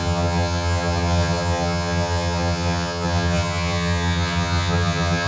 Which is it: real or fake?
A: fake